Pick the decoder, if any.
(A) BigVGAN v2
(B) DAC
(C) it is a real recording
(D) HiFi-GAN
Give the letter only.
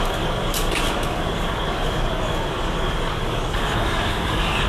B